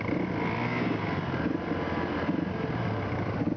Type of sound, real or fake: real